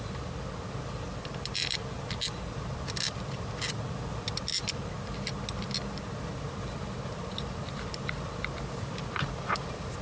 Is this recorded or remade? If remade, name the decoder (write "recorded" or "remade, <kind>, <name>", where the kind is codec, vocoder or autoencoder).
recorded